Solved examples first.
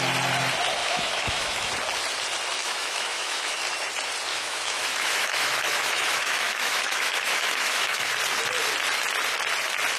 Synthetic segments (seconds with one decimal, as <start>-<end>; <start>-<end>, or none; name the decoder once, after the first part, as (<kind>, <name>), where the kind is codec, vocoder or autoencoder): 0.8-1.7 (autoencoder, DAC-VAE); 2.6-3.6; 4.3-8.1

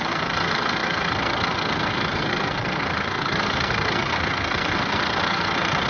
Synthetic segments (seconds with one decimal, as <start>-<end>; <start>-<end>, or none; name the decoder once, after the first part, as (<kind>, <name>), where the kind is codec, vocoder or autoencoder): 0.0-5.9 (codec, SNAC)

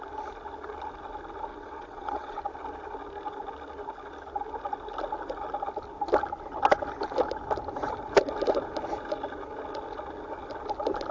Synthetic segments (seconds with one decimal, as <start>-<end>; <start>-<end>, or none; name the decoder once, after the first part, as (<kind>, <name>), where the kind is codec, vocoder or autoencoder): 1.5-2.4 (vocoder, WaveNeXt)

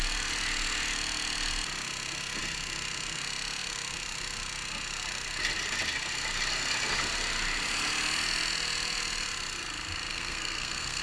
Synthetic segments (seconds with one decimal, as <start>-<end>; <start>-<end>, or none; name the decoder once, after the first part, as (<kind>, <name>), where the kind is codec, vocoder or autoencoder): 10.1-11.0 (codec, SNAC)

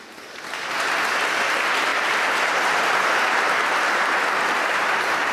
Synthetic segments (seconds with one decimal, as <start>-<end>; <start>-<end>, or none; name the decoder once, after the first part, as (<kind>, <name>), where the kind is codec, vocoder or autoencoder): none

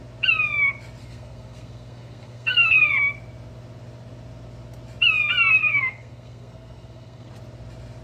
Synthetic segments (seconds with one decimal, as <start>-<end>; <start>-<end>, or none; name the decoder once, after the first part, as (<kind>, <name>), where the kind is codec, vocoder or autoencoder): 1.0-2.9 (codec, SNAC); 5.6-7.3

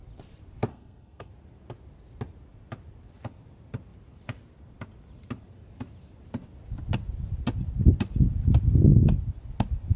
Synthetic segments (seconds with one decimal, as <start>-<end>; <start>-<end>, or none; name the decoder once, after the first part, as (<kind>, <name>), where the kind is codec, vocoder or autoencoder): 0.7-1.3 (codec, SNAC)

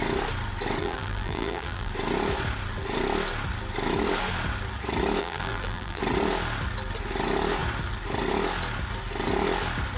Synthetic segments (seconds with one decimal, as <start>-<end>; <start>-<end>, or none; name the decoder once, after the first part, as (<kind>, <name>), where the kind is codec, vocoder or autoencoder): 0.8-1.9 (vocoder, BigVGAN v2); 5.2-6.0